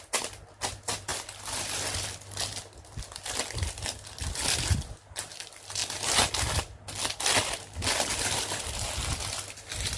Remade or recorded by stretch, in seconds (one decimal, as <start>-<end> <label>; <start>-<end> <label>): 0.0-10.0 recorded